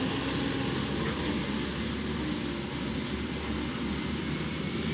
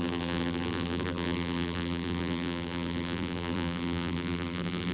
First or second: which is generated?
second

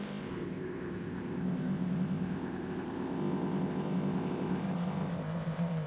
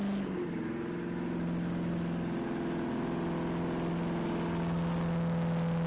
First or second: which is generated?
first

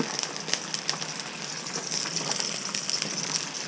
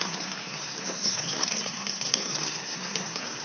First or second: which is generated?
second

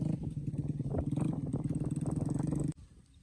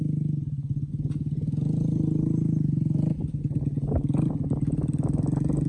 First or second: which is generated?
first